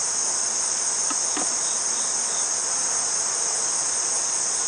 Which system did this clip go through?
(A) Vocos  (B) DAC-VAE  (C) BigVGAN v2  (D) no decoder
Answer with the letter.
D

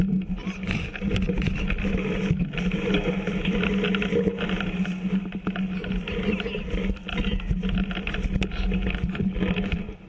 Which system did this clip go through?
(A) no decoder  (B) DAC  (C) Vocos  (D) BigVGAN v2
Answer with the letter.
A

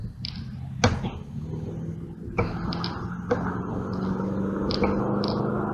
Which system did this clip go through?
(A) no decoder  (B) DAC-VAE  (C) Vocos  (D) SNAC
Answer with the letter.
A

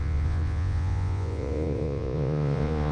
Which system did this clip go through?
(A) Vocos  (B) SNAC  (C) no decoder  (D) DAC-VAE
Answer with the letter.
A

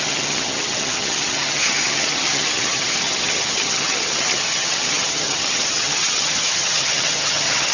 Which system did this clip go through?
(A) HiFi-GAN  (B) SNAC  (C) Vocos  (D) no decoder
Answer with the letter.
A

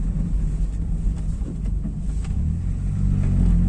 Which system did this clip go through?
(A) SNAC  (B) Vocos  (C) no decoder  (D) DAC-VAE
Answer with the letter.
C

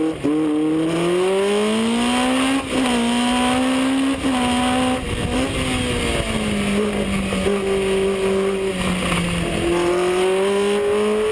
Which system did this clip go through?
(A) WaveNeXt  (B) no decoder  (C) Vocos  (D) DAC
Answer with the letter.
B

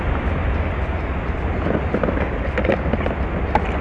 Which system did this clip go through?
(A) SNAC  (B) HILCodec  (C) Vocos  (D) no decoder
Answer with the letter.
D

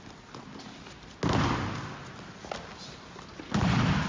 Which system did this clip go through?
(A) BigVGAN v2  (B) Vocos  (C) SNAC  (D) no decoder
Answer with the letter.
D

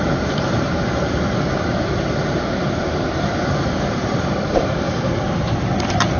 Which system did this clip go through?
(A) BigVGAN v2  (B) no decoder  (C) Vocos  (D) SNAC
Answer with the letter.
A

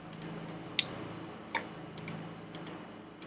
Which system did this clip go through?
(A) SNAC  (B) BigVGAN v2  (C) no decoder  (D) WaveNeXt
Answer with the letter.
C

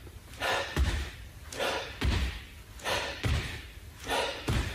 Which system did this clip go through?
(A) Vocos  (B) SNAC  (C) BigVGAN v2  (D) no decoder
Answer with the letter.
C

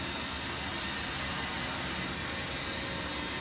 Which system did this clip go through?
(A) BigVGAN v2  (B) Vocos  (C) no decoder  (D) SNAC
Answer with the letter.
C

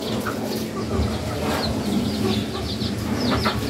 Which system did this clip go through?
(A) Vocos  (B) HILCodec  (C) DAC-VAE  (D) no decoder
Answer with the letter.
D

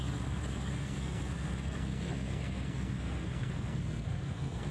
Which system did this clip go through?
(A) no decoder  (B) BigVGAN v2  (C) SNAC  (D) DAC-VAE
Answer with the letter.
C